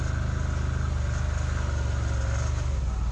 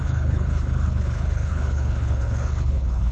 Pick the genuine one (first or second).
first